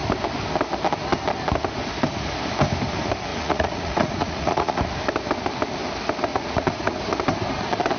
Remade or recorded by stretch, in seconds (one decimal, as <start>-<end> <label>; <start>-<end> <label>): 0.0-3.3 recorded; 3.3-4.8 remade; 4.8-6.3 recorded; 6.3-7.0 remade; 7.0-8.0 recorded